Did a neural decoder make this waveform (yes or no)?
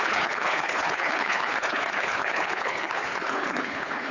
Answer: yes